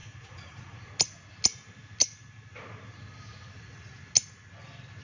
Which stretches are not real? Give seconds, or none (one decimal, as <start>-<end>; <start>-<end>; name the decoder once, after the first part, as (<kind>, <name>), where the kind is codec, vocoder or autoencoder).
0.0-0.9 (vocoder, Vocos)